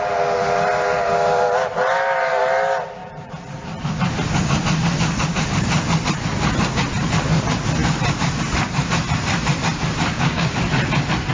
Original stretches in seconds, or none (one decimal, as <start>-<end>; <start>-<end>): 0.0-10.1; 10.7-11.3